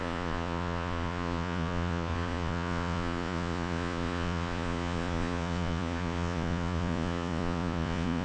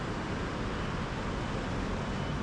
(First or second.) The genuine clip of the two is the second